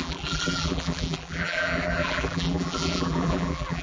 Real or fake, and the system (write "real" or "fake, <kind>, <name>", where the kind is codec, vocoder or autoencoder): fake, vocoder, BigVGAN v2